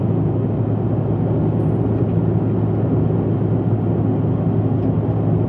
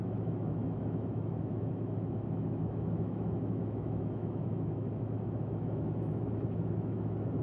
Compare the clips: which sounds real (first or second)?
first